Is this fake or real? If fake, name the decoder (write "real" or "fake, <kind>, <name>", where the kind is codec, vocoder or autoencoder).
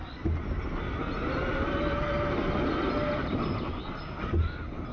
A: real